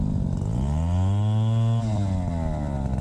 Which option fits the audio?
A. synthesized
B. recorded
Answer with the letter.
B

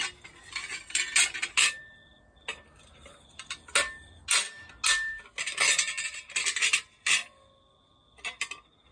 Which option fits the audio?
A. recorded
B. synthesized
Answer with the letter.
A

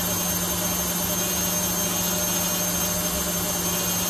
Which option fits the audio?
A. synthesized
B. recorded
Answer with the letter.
B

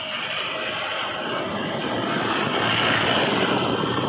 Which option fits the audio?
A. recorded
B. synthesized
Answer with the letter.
A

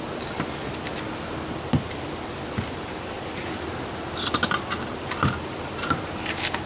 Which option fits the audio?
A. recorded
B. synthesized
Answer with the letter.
A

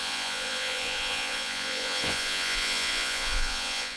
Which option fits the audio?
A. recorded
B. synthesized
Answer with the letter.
B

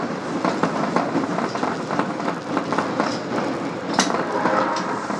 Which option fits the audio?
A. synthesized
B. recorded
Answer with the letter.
B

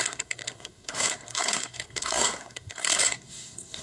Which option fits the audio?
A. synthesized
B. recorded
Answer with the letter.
A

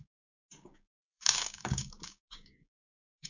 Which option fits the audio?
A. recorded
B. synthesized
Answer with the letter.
B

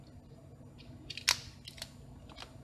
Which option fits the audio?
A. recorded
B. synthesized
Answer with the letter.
A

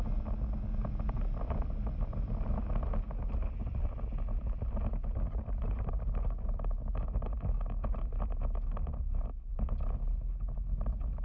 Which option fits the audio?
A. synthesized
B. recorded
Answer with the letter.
B